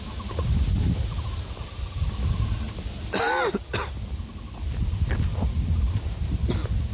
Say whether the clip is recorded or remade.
recorded